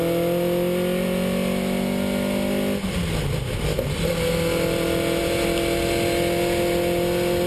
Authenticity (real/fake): real